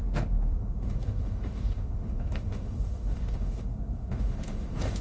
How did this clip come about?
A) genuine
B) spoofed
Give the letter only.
B